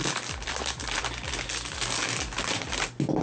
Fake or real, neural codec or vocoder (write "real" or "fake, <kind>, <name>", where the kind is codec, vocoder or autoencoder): real